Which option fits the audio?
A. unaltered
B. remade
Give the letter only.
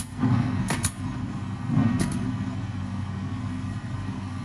B